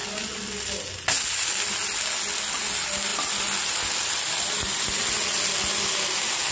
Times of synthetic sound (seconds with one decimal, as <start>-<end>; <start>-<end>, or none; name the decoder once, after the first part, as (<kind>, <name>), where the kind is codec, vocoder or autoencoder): none